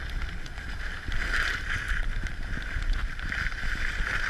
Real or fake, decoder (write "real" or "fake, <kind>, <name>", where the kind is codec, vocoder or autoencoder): real